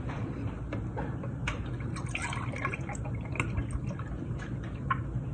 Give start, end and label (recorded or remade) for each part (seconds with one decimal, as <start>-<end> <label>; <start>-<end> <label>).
0.0-5.3 recorded